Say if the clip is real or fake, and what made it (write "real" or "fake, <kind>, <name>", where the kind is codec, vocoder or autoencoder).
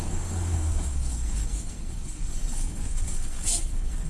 fake, codec, SNAC